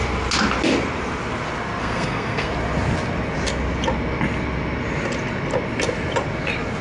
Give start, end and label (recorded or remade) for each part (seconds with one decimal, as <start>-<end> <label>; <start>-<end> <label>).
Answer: 0.0-1.8 recorded; 1.8-2.5 remade; 2.5-6.8 recorded